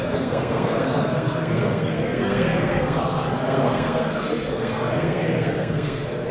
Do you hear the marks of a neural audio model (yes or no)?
yes